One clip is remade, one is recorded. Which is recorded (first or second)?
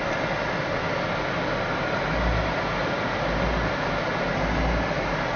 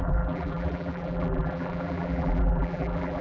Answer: first